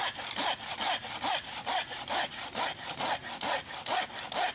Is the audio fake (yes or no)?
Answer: no